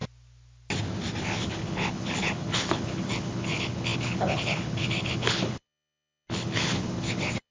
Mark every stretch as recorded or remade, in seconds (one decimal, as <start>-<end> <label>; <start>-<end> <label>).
0.0-1.2 recorded; 1.2-7.5 remade